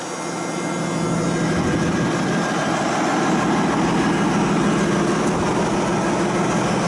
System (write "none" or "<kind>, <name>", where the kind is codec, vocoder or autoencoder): none